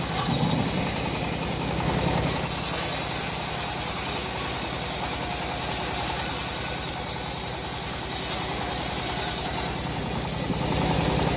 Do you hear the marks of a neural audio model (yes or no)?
no